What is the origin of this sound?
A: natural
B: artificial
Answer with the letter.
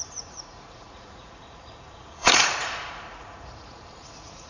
B